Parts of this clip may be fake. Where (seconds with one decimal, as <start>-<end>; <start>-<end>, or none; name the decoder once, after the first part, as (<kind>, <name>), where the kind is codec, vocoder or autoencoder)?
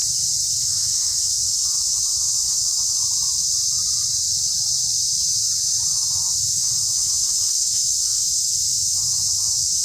0.6-3.0 (autoencoder, DAC-VAE); 5.9-9.8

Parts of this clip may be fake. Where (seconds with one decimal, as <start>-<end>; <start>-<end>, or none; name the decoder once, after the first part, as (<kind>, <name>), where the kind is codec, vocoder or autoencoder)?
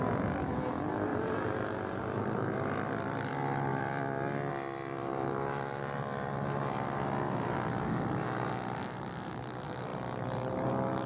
1.1-3.3 (vocoder, BigVGAN v2); 3.7-4.5; 9.9-10.7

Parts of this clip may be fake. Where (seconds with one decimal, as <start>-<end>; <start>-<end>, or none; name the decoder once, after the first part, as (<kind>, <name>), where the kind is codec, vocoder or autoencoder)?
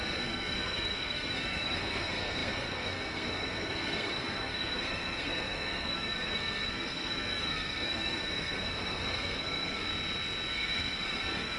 0.0-9.9 (codec, SNAC); 10.5-11.6